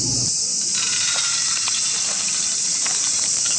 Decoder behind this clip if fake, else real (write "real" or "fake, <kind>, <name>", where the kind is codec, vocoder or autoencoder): fake, vocoder, BigVGAN v2